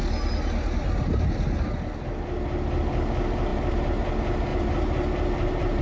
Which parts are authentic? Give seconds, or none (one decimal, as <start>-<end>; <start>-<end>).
0.0-3.5; 4.1-4.5